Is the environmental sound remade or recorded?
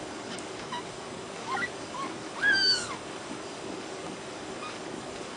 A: remade